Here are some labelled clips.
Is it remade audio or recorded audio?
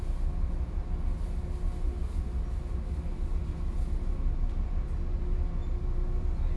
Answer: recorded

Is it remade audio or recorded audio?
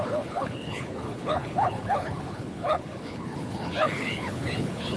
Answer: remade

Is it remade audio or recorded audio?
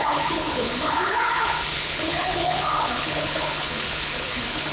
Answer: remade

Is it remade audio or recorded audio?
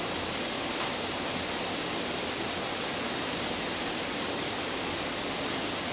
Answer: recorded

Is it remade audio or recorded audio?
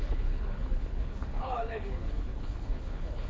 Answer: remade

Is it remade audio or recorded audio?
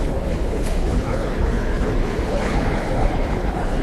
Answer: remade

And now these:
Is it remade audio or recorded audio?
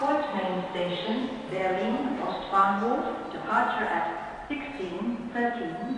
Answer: recorded